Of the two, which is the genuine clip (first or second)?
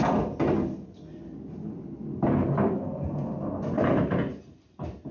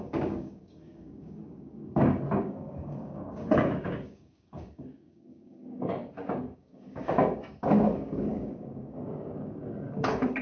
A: first